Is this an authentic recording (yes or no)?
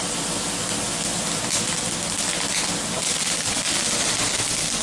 yes